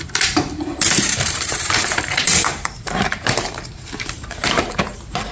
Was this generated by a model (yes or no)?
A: yes